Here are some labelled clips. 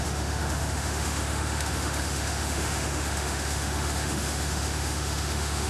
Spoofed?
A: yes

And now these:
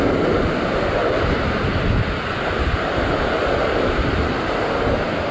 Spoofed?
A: no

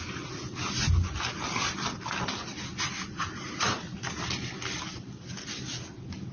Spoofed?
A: no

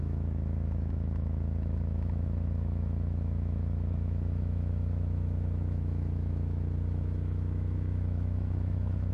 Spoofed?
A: yes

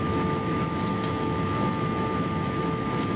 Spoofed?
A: yes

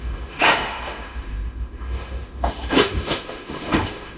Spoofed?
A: yes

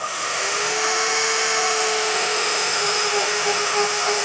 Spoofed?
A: yes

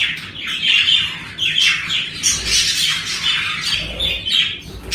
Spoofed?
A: no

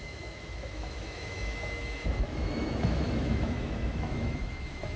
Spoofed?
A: yes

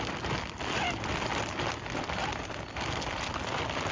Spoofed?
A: no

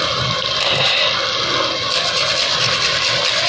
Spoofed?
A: no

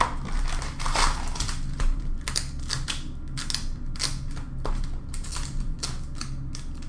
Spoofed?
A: no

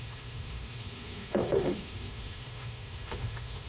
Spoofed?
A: yes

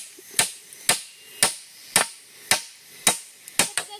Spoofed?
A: no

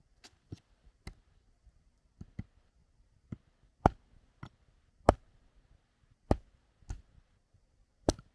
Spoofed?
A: no